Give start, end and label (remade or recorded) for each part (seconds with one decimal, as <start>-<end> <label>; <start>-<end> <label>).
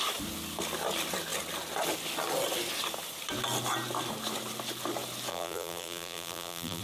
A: 0.0-5.3 recorded; 5.3-6.8 remade